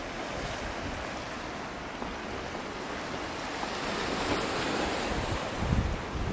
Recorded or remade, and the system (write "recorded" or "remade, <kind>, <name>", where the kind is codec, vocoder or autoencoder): recorded